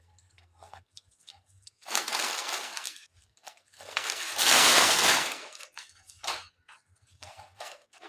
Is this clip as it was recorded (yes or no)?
no